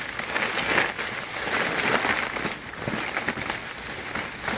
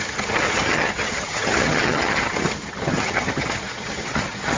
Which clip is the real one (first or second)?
first